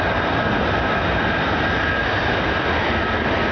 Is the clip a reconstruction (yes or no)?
no